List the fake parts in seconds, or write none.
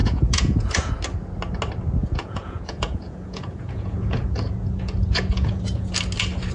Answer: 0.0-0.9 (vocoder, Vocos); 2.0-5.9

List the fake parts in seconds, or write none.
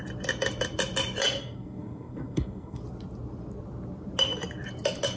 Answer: 1.4-2.8 (codec, SNAC)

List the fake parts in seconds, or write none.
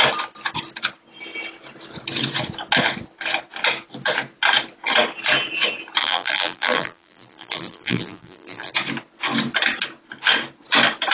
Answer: 6.0-8.7 (vocoder, BigVGAN v2)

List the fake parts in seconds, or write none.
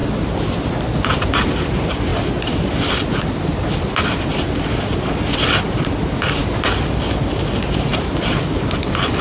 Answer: none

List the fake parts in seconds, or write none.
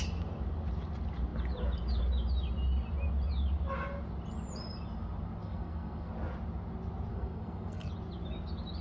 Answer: 5.4-6.1 (codec, SNAC); 7.1-7.9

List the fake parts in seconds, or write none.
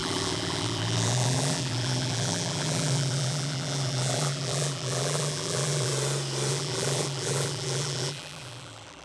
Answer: 0.0-5.9 (vocoder, BigVGAN v2); 6.5-9.0